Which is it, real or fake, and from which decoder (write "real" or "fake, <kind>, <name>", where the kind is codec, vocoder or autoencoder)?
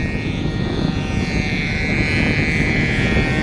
real